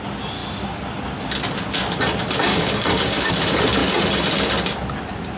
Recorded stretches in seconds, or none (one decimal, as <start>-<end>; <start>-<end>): 0.0-2.5; 3.3-5.4